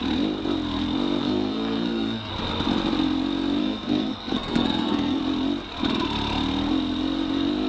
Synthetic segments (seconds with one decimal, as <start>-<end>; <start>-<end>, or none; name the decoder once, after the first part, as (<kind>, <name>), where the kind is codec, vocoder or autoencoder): 1.2-2.3 (codec, SNAC); 3.6-5.2

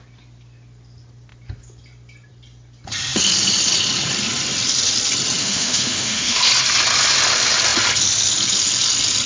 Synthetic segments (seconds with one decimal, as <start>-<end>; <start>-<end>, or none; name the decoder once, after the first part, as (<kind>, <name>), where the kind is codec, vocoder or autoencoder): 5.4-6.4 (autoencoder, DAC-VAE)

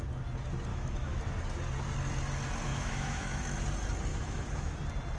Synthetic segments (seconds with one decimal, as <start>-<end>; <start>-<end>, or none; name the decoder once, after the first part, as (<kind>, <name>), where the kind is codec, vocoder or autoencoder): 0.7-1.2 (autoencoder, DAC-VAE); 2.7-3.4; 4.1-4.7

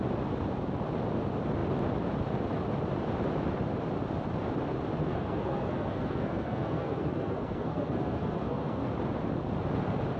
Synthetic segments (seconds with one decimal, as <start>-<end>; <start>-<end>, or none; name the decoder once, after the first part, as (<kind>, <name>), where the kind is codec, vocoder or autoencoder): 5.0-8.9 (codec, SNAC)

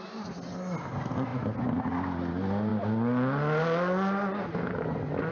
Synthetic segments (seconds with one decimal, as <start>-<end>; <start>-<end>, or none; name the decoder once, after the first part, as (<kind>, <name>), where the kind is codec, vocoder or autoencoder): none

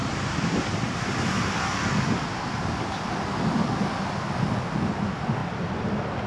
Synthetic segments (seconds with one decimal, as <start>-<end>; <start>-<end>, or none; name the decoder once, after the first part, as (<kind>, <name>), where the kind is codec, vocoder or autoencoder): 0.0-3.8 (vocoder, BigVGAN v2); 5.4-6.3

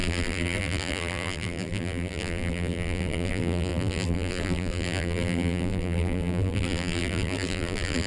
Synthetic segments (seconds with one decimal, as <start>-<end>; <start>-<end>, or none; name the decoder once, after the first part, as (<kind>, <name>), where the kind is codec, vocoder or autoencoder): 0.0-8.1 (vocoder, BigVGAN v2)